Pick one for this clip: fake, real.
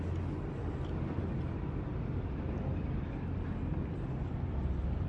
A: real